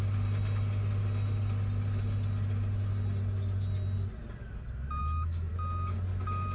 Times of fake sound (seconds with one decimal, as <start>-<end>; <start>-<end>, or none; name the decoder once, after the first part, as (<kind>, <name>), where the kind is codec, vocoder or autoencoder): 5.0-5.5 (autoencoder, DAC-VAE)